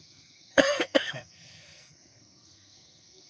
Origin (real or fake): fake